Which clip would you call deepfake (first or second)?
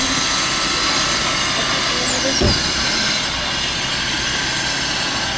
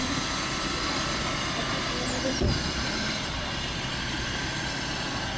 second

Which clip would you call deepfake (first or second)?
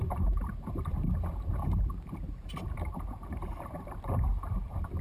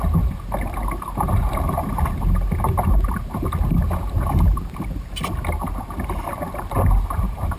first